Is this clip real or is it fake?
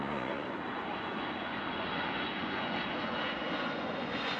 fake